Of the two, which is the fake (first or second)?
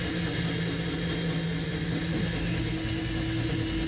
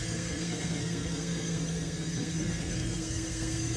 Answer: second